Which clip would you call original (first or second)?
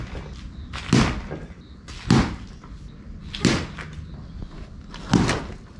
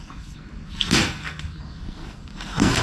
first